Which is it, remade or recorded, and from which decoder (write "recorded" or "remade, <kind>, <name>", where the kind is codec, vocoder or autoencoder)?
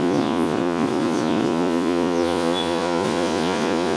remade, vocoder, Vocos